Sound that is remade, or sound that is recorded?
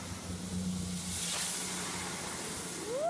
recorded